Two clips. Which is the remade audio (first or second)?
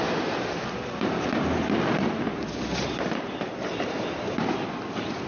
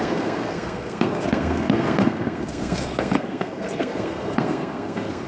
second